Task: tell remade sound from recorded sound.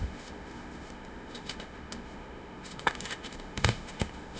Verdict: remade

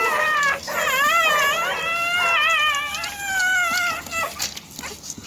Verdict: recorded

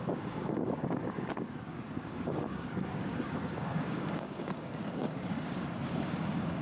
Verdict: remade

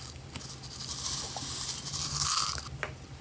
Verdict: recorded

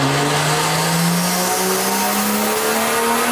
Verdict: recorded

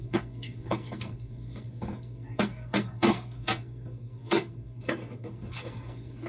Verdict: remade